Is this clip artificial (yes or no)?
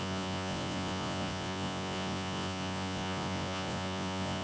yes